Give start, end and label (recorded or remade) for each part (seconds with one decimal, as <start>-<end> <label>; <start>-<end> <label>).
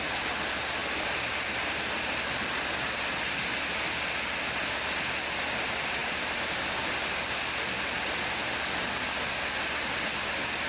0.0-6.0 recorded; 6.0-6.6 remade; 6.6-10.7 recorded